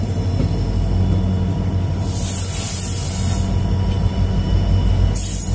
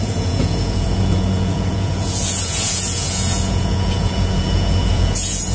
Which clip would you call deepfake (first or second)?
second